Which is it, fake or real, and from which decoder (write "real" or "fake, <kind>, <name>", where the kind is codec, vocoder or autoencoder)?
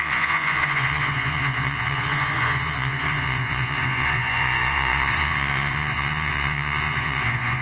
fake, vocoder, Vocos